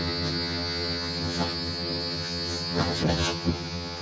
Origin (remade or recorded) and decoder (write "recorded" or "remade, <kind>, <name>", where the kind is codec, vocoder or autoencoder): remade, vocoder, HiFi-GAN